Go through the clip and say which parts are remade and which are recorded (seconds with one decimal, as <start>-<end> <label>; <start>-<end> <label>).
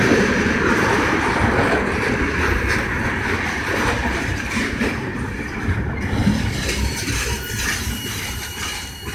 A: 0.0-1.4 remade; 1.4-4.0 recorded; 4.0-5.0 remade; 5.0-9.1 recorded